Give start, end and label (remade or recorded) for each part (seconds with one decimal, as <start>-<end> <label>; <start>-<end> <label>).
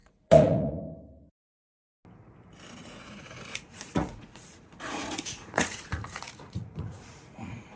0.0-0.8 remade; 0.8-2.8 recorded; 2.8-7.8 remade